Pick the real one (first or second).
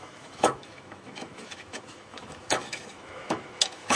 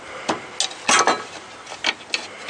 second